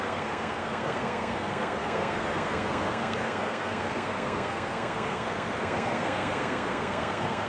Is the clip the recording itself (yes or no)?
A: no